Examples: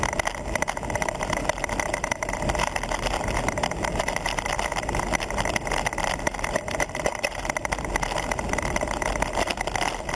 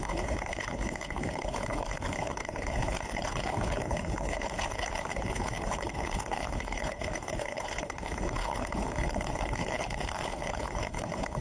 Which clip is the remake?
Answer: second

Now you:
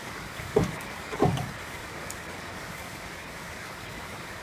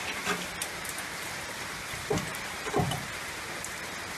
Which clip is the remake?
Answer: first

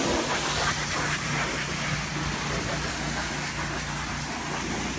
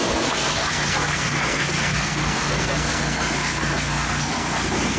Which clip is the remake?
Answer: second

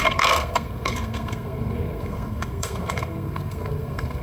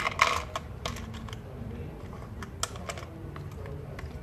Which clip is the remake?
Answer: first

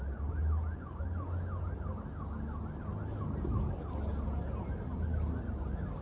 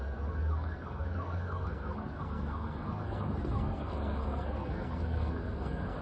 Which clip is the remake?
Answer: second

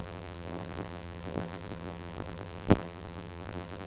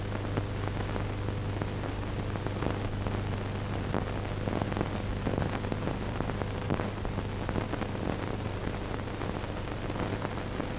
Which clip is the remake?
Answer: first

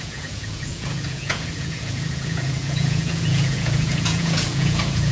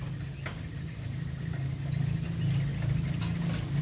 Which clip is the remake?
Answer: first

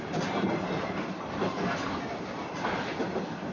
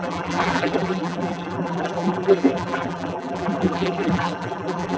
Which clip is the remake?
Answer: second